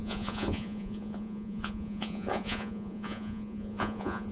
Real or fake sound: fake